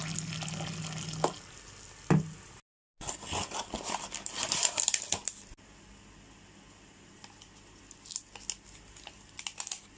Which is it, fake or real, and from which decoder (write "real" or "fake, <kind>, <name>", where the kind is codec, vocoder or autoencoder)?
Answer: real